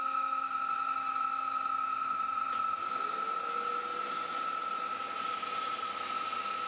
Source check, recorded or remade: recorded